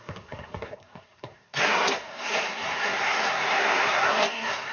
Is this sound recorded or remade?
remade